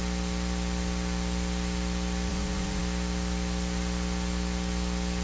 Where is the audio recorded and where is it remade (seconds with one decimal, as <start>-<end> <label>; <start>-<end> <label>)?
0.0-2.3 recorded; 2.3-2.8 remade; 2.8-5.2 recorded